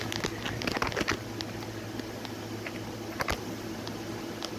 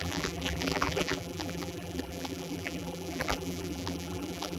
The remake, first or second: second